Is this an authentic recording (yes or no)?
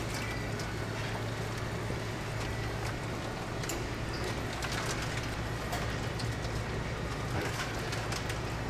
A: yes